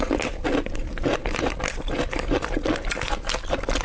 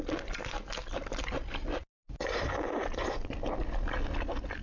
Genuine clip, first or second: second